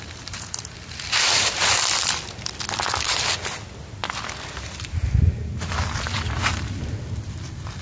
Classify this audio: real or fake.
real